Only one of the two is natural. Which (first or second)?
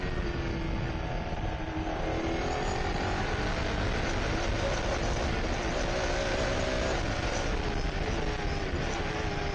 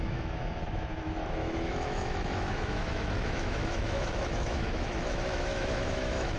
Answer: first